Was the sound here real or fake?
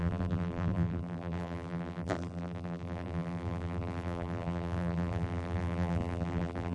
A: fake